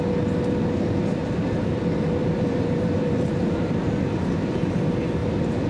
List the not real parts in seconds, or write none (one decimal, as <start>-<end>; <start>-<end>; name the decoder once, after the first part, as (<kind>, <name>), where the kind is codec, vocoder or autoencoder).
1.2-1.8 (vocoder, BigVGAN v2); 2.2-4.8; 5.2-5.7